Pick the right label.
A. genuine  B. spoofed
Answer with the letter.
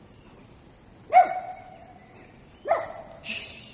A